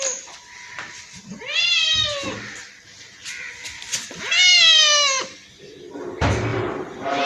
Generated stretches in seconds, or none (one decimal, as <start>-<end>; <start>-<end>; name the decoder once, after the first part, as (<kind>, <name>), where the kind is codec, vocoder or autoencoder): 1.8-4.1 (vocoder, BigVGAN v2); 6.5-7.3